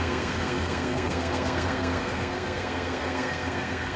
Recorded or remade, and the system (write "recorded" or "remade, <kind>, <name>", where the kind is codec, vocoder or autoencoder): remade, codec, SNAC